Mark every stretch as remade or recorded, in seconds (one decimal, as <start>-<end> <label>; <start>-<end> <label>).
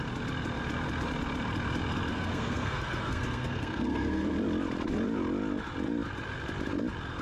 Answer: 0.0-2.1 recorded; 2.1-4.3 remade; 4.3-7.2 recorded